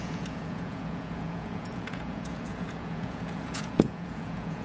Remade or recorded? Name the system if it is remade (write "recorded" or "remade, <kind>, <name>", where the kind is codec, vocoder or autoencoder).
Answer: remade, vocoder, Vocos